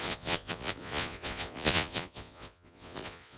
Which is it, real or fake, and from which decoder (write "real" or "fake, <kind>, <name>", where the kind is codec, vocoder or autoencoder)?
fake, vocoder, Vocos